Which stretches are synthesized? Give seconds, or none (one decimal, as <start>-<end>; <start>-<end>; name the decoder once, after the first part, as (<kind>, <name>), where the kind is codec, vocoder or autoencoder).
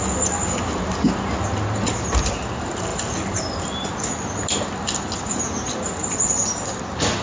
2.9-4.1 (vocoder, BigVGAN v2)